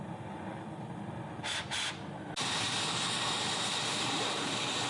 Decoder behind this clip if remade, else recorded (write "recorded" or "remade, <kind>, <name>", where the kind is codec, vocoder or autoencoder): recorded